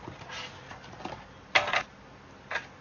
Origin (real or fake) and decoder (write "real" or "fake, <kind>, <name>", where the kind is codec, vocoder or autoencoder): real